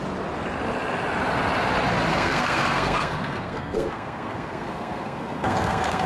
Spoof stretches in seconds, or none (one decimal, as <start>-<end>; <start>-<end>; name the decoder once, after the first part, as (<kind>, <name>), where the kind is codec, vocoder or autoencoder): 2.1-6.1 (codec, SNAC)